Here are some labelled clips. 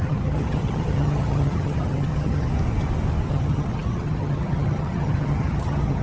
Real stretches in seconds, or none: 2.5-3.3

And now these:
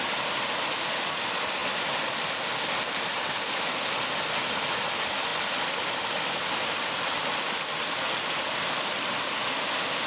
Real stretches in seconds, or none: 0.0-10.1

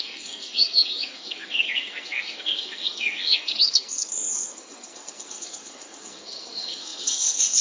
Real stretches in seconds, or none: none

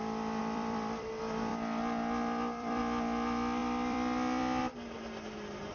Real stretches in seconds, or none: 0.0-0.4; 1.1-1.5; 2.8-3.6; 4.6-5.7